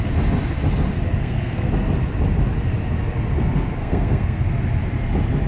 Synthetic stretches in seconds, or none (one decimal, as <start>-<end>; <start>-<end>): 1.2-1.7; 3.8-4.4